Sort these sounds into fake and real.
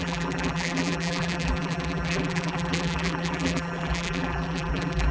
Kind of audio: fake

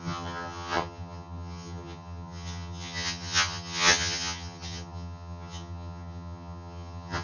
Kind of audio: fake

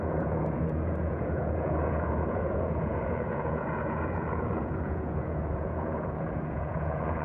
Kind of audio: fake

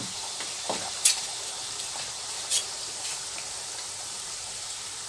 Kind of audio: fake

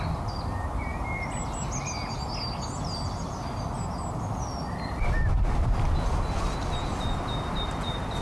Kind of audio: real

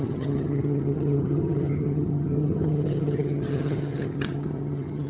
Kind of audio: fake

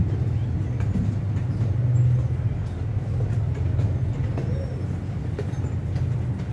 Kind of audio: real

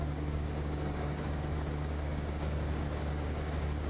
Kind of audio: fake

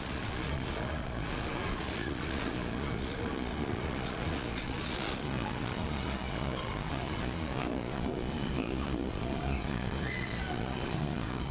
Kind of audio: fake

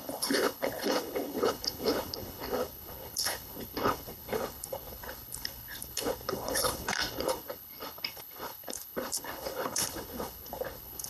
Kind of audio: fake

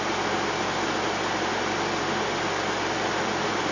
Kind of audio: real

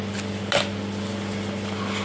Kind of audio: real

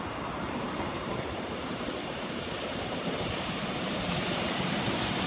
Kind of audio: fake